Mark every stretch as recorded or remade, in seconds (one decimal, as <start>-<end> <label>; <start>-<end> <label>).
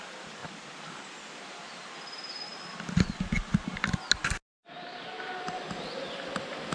0.0-6.7 recorded